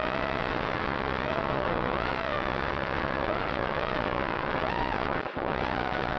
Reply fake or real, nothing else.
fake